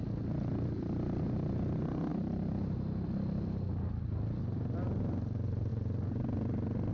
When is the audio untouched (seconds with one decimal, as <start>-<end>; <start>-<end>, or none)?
0.0-6.9